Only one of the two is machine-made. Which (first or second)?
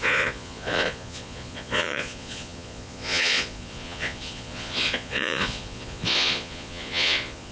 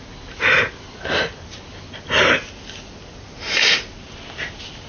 first